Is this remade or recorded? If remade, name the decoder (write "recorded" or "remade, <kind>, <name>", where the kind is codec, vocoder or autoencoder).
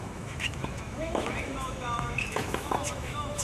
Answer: remade, autoencoder, DAC-VAE